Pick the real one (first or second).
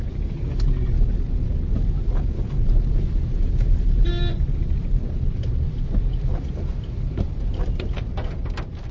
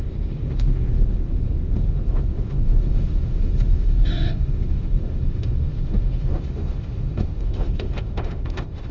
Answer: first